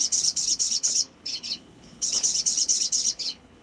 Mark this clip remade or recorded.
remade